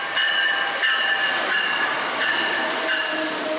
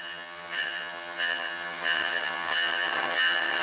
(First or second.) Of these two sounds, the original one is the first